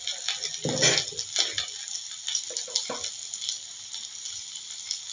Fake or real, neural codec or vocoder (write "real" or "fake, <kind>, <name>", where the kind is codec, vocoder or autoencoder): real